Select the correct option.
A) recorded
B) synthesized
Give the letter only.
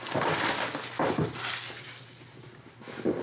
A